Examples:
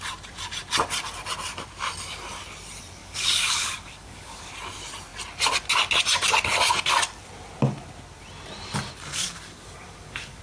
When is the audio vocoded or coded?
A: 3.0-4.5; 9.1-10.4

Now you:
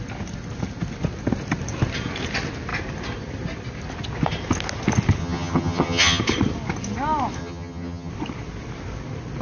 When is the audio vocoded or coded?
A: 5.2-6.2; 7.4-8.1

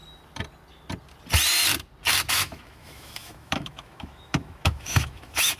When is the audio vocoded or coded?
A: 2.3-5.6

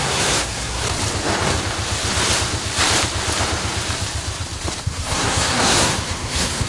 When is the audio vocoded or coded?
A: 0.0-0.8; 4.8-6.7